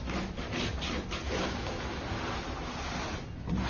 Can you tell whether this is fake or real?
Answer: real